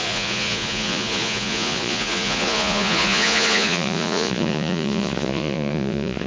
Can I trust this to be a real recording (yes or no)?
no